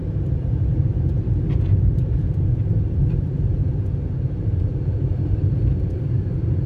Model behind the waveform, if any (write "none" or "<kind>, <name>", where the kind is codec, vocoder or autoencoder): vocoder, BigVGAN v2